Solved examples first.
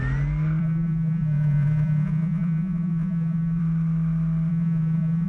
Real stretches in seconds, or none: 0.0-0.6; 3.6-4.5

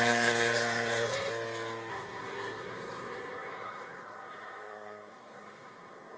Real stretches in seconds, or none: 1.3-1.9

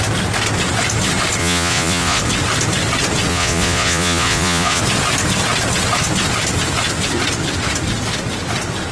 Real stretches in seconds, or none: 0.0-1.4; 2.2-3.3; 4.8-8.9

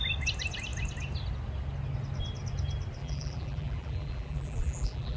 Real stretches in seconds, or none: 0.0-3.0

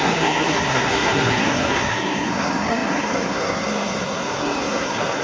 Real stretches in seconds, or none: none

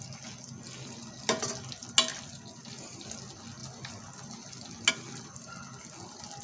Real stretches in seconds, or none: 0.0-6.4

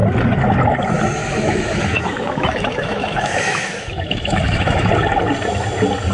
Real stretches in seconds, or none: 0.0-1.2; 4.9-6.1

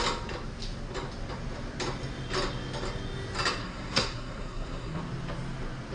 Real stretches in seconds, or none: 0.0-3.6; 5.0-5.9